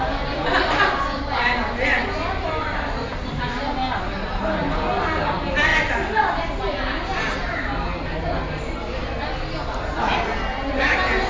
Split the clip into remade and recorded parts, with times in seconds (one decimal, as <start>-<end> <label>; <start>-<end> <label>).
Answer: 0.0-11.3 recorded